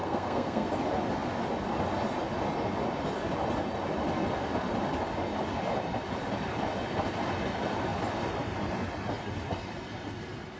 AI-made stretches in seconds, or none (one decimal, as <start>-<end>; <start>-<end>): 0.0-0.7